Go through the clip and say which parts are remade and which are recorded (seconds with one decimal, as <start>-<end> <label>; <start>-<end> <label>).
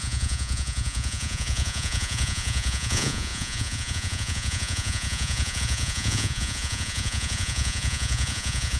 0.0-8.8 remade